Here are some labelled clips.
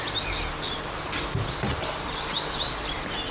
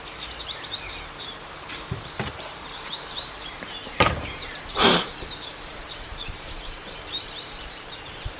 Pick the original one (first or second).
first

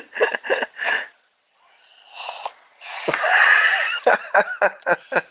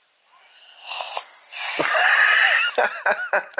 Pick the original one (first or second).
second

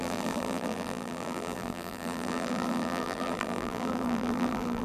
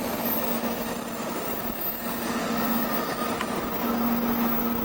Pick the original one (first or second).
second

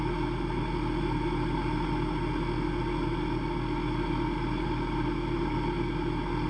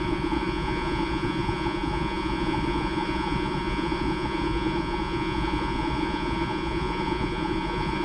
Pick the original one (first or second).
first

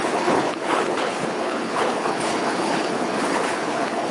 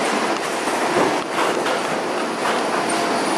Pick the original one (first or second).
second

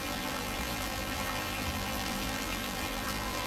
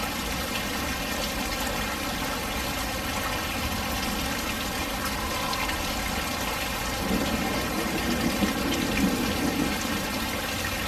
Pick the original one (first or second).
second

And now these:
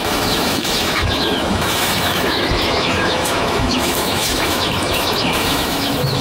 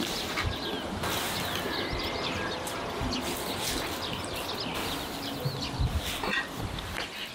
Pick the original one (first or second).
second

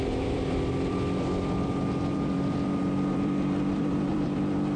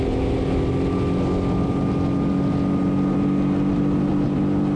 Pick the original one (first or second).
second